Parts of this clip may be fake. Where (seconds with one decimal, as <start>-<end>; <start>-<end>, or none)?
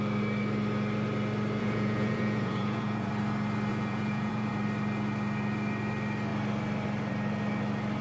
1.6-3.1; 3.7-4.5